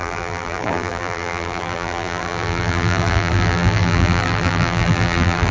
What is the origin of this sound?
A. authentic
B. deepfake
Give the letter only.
B